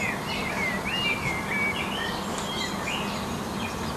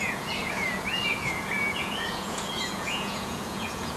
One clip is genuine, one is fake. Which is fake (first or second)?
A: second